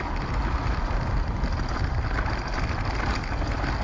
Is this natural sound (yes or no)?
yes